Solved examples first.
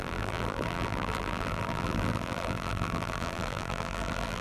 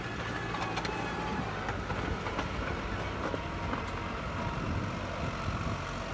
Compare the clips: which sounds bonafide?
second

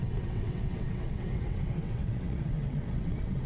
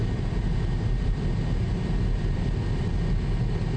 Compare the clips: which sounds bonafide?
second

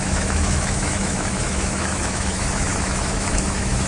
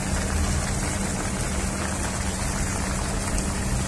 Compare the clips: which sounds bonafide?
second